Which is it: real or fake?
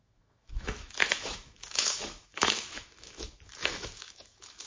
fake